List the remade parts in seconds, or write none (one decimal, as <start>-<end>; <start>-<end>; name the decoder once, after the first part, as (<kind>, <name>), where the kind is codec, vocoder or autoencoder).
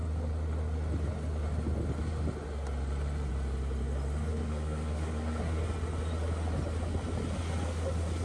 4.3-5.6 (codec, SNAC)